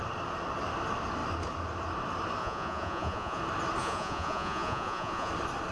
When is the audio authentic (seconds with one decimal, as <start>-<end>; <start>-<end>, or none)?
0.0-2.4; 3.4-3.8; 5.3-5.7